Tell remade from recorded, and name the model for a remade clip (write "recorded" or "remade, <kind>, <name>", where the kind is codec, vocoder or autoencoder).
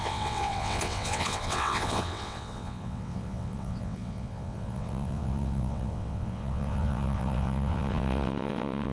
remade, vocoder, WaveNeXt